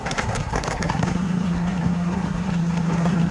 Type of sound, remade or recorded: remade